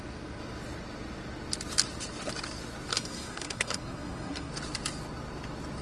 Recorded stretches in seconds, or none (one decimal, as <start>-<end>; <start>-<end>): 0.0-2.9; 4.5-5.8